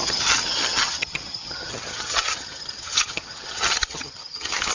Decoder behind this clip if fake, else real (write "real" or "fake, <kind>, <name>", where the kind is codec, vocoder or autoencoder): fake, vocoder, HiFi-GAN